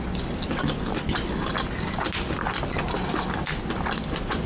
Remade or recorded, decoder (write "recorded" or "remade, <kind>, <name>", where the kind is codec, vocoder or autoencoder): recorded